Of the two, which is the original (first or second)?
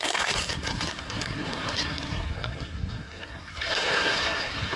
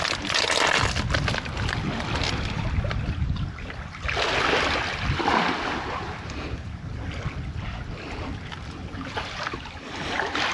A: second